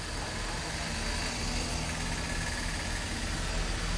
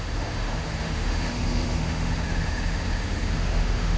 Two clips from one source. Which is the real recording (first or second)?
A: first